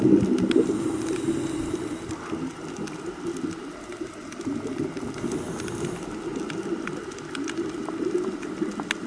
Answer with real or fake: real